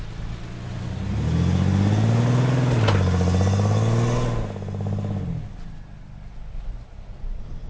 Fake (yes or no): no